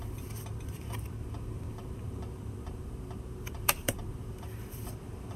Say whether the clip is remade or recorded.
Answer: remade